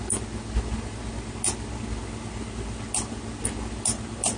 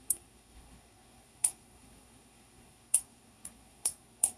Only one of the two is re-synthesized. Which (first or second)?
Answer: second